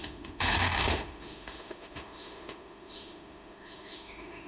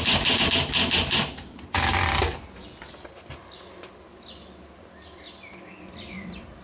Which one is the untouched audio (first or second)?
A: second